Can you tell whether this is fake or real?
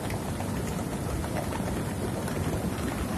real